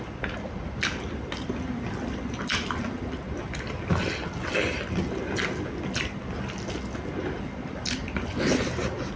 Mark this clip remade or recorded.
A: recorded